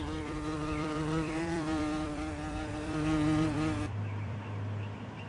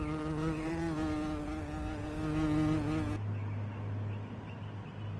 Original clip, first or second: second